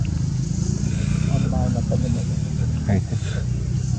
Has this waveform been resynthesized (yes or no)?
no